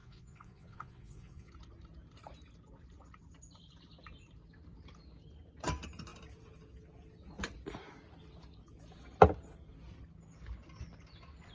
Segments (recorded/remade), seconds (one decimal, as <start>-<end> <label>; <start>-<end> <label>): 0.0-1.5 remade; 1.5-11.5 recorded